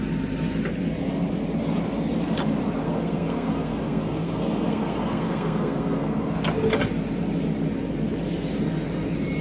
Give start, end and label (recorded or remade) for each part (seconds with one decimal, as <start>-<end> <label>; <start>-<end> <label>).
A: 0.0-2.8 recorded; 2.8-6.4 remade; 6.4-9.4 recorded